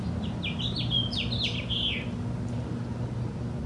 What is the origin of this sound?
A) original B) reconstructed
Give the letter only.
A